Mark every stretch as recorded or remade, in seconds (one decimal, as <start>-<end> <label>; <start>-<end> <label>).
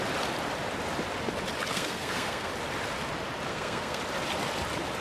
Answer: 0.0-1.7 recorded; 1.7-2.5 remade; 2.5-3.5 recorded; 3.5-4.0 remade; 4.0-5.0 recorded